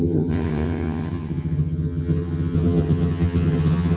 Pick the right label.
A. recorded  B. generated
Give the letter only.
B